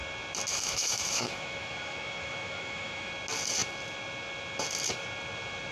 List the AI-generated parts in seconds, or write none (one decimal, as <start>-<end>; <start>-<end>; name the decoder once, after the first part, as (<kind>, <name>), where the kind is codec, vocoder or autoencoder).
0.5-3.1 (autoencoder, DAC-VAE)